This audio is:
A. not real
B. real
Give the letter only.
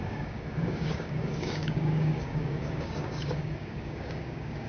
A